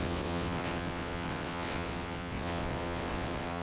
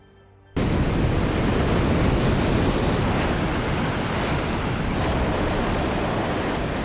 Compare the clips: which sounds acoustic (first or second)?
second